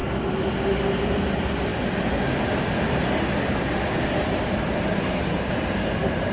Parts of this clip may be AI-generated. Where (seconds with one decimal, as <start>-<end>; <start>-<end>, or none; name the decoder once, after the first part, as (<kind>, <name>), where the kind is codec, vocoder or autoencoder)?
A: 1.2-1.7 (vocoder, BigVGAN v2); 5.5-6.3